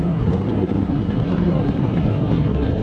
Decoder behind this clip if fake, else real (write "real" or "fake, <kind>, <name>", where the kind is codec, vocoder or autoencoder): fake, codec, SNAC